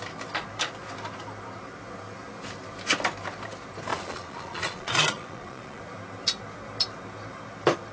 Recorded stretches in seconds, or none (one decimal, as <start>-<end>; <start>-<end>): 0.0-3.9; 5.8-7.9